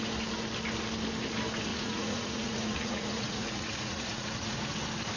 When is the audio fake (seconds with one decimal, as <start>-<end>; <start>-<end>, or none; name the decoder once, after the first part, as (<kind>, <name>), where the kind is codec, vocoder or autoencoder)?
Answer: 1.7-4.8 (vocoder, Vocos)